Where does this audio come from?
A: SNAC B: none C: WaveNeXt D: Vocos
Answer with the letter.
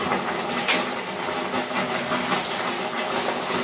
B